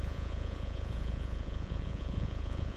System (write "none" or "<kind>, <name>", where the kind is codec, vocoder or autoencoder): vocoder, Vocos